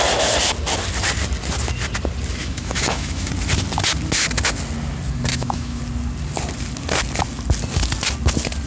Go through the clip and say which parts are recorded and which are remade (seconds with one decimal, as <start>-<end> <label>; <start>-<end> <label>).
0.0-2.4 recorded; 2.4-3.3 remade; 3.3-5.3 recorded; 5.3-5.8 remade; 5.8-8.7 recorded